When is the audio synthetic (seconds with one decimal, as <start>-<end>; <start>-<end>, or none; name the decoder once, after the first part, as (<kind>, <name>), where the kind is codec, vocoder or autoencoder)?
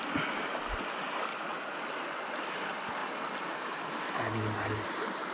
1.3-1.8 (vocoder, Vocos)